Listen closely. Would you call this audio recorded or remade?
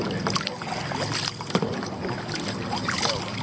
remade